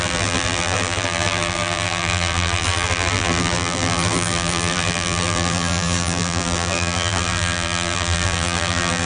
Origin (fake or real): fake